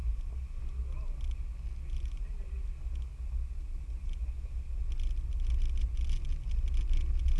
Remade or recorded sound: recorded